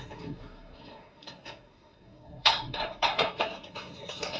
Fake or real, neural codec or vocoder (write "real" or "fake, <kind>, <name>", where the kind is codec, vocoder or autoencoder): fake, codec, SNAC